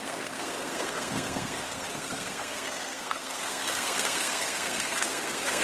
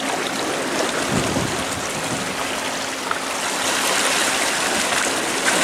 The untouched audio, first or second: second